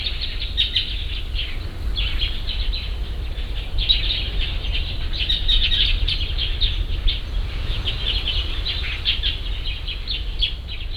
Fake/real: real